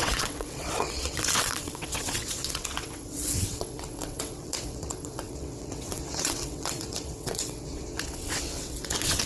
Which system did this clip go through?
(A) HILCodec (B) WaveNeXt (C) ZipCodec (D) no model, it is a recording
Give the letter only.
B